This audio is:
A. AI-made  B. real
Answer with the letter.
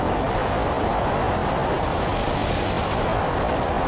B